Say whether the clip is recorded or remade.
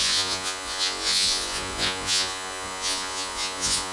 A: remade